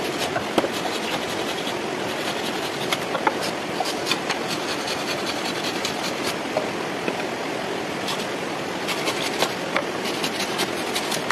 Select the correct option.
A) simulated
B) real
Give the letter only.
A